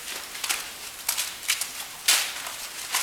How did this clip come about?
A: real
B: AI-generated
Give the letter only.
A